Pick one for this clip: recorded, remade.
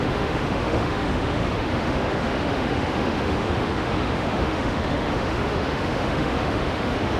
remade